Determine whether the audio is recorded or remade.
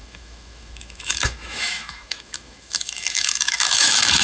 remade